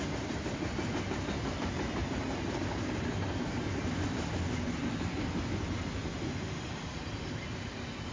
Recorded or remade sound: recorded